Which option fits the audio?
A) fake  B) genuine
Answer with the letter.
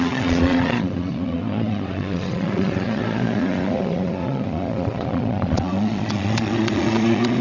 A